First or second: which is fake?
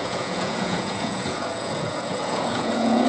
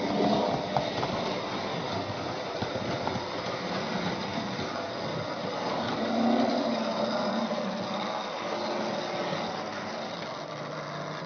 first